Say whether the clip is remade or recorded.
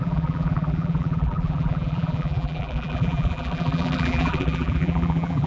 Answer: remade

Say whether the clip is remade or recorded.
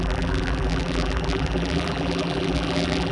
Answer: remade